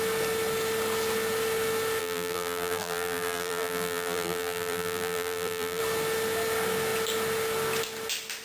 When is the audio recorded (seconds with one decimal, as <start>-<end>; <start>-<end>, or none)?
0.0-2.0; 5.8-8.4